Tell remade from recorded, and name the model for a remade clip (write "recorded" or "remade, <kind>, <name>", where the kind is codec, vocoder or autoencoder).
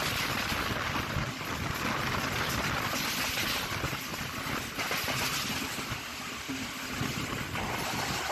recorded